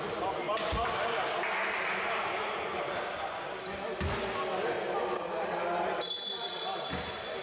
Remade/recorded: recorded